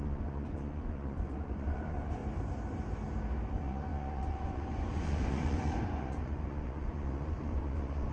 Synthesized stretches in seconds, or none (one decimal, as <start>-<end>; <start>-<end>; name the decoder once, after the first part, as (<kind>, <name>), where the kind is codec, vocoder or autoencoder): 0.0-2.2 (vocoder, Vocos); 3.5-8.1